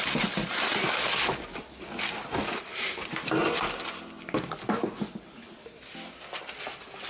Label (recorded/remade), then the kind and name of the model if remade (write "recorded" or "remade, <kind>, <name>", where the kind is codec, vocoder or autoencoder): recorded